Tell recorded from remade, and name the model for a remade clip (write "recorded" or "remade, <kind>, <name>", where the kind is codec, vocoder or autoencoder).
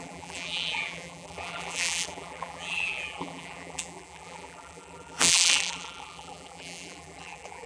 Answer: remade, vocoder, BigVGAN v2